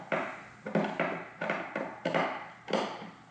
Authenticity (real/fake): real